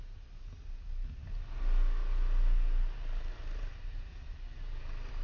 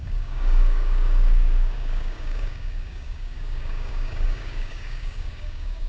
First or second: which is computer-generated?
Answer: second